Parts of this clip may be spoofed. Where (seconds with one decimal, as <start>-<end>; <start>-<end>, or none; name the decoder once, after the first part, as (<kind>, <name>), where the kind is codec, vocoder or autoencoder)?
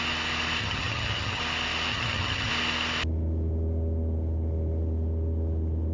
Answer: 0.6-1.4 (vocoder, HiFi-GAN); 1.9-2.5